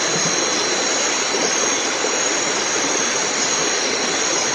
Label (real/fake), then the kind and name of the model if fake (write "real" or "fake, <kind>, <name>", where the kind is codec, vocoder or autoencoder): real